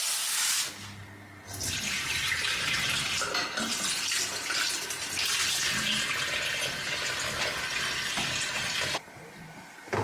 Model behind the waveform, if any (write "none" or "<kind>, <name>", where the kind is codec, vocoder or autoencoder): none